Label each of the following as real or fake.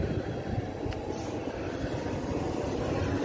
real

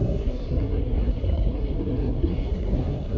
fake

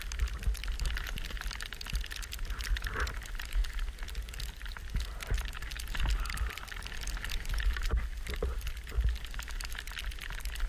real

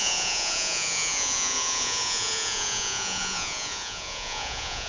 fake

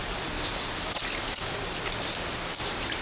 real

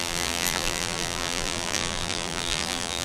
fake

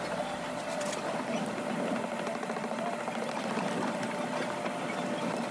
real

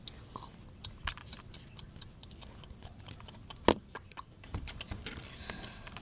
real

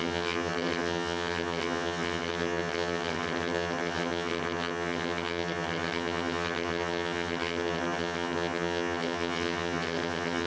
fake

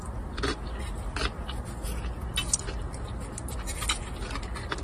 real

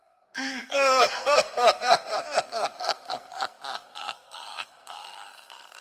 fake